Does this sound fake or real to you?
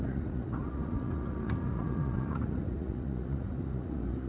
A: fake